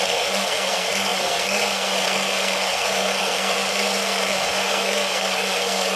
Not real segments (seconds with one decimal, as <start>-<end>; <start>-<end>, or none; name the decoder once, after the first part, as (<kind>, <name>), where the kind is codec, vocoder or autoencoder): 0.0-6.0 (codec, SNAC)

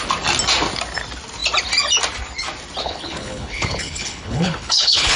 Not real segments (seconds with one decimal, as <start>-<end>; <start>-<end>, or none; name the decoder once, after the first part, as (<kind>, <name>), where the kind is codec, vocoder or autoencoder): 2.8-5.2 (codec, HILCodec)

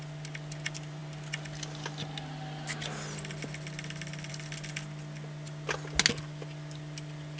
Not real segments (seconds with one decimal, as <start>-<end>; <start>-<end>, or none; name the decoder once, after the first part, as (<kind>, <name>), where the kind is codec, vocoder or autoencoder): none

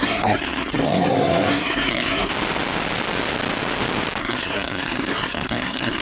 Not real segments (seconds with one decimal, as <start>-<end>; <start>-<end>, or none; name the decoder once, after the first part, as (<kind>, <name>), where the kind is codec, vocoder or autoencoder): 0.0-2.3 (codec, SNAC); 4.2-6.0

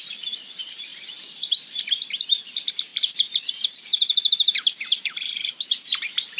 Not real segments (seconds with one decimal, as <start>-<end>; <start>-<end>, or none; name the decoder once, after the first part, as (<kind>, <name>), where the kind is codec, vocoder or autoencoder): 0.0-6.4 (vocoder, BigVGAN v2)